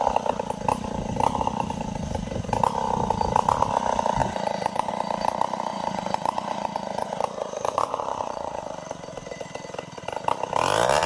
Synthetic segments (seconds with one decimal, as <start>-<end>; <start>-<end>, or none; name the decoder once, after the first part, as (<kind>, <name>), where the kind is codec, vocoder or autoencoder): 4.2-4.9 (vocoder, Vocos); 5.7-8.6